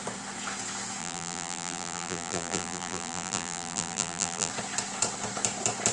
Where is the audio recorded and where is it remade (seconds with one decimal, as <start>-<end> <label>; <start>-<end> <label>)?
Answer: 0.0-1.0 recorded; 1.0-4.5 remade; 4.5-5.9 recorded